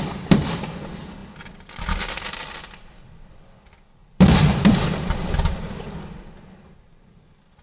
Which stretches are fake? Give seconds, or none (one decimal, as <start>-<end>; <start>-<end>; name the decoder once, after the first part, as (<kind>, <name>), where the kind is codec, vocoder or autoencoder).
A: 1.2-2.6 (vocoder, BigVGAN v2); 4.0-4.9